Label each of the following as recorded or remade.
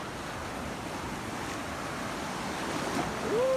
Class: recorded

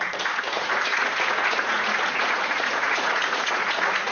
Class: remade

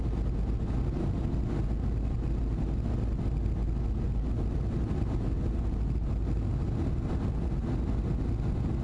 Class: recorded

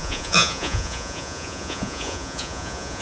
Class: remade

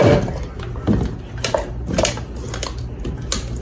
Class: recorded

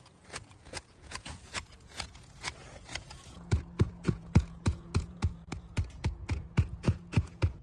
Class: remade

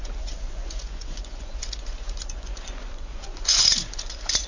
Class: remade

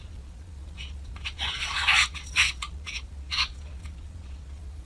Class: remade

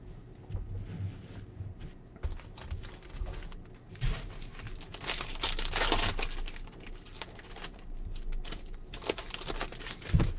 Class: recorded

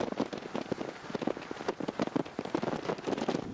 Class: recorded